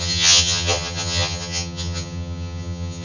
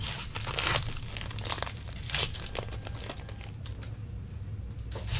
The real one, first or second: second